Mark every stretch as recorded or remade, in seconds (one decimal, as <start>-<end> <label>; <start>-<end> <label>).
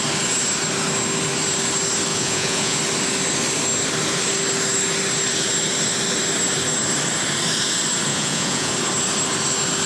0.0-2.1 recorded; 2.1-2.8 remade; 2.8-8.1 recorded; 8.1-8.7 remade; 8.7-9.9 recorded